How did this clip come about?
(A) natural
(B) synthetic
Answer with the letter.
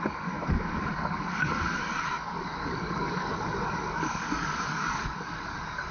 B